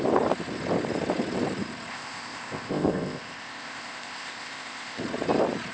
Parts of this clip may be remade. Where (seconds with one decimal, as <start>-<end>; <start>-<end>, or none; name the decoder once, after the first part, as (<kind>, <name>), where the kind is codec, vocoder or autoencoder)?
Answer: 1.9-5.0 (codec, ZipCodec)